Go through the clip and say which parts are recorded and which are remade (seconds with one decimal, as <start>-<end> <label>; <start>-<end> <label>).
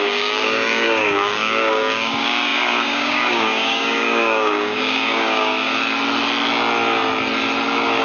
0.0-5.7 remade; 5.7-8.0 recorded